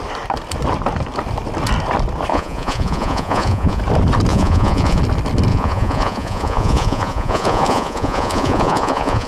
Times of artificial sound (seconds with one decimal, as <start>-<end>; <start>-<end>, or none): 2.3-3.8; 4.3-5.0; 5.5-9.3